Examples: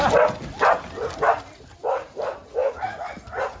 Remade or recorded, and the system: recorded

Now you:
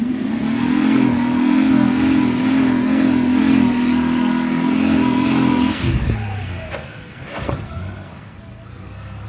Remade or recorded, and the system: remade, codec, SNAC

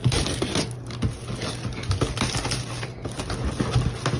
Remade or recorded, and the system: recorded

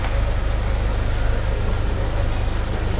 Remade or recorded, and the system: recorded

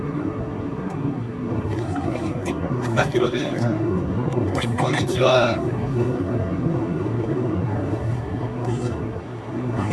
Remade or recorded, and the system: remade, codec, SNAC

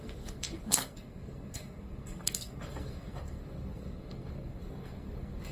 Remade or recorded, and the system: remade, codec, SNAC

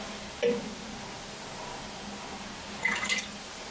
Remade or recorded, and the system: recorded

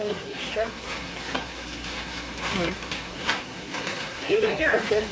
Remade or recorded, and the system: remade, codec, SNAC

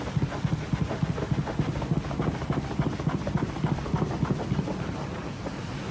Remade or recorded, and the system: recorded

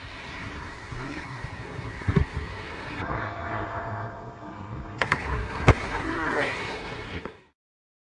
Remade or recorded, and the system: remade, codec, SNAC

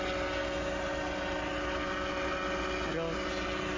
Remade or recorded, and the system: recorded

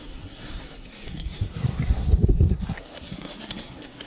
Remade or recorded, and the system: remade, codec, SNAC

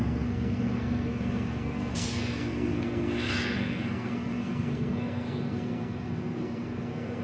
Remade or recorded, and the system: remade, codec, SNAC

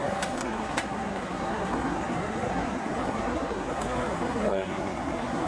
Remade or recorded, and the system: remade, codec, SNAC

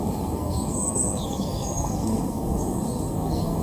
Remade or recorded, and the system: remade, codec, SNAC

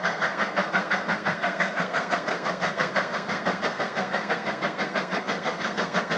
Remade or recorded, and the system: remade, codec, SNAC